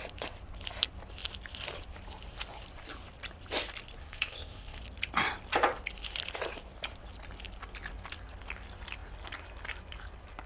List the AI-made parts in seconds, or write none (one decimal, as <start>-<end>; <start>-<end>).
4.0-4.8